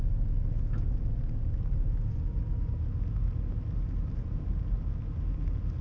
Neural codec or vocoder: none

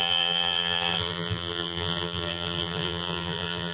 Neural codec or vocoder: vocoder, BigVGAN v2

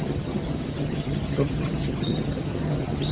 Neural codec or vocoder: vocoder, HiFi-GAN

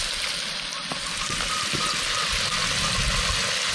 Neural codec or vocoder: none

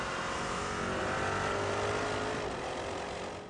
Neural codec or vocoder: none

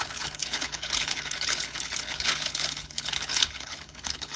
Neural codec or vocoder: codec, HILCodec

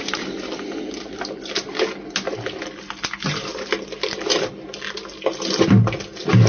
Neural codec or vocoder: none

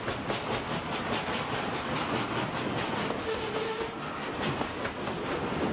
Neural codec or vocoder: none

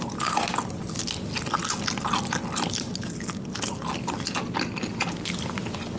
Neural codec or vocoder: none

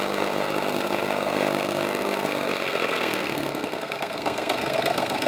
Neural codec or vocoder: codec, SNAC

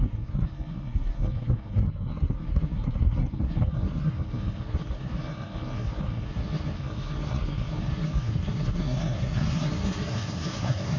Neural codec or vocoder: codec, SNAC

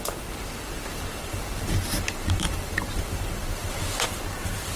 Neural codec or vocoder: vocoder, BigVGAN v2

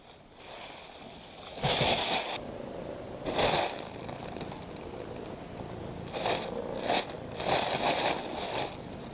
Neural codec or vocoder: none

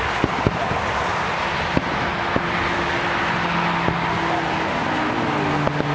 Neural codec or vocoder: none